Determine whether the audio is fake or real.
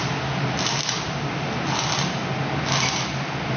real